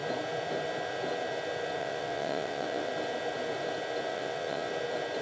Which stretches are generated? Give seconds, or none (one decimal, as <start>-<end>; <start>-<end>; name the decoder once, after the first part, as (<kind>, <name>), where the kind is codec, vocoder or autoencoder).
1.8-2.9 (vocoder, WaveNeXt); 4.1-4.7